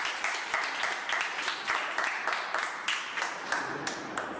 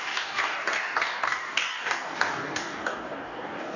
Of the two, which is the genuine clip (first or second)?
first